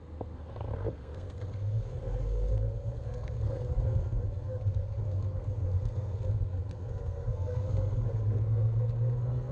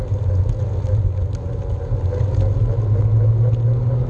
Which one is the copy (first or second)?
first